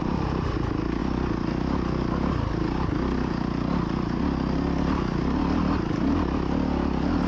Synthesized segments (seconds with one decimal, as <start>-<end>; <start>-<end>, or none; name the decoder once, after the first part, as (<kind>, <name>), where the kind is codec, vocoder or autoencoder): none